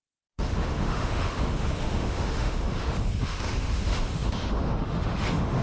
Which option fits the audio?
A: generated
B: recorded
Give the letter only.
A